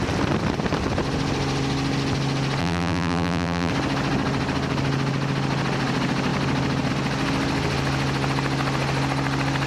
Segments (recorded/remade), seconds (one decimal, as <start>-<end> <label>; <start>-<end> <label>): 0.0-2.6 recorded; 2.6-3.7 remade; 3.7-9.7 recorded